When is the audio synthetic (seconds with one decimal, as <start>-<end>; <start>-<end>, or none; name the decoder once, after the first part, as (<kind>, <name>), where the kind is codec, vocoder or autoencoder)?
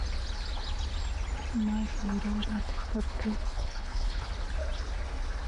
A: 2.5-4.3 (codec, HILCodec)